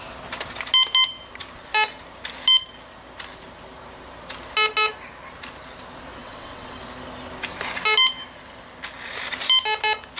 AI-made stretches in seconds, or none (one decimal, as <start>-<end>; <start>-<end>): 6.2-6.8